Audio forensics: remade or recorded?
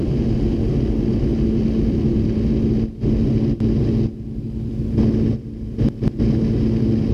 recorded